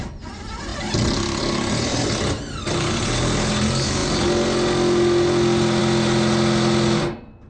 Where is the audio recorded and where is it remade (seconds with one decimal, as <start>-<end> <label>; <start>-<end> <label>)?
0.0-0.7 recorded; 0.7-1.4 remade; 1.4-1.9 recorded; 1.9-2.9 remade; 2.9-7.5 recorded